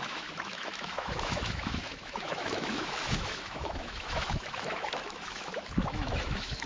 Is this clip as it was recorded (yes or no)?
no